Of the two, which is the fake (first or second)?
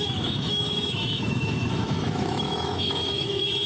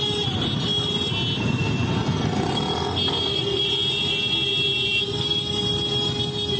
first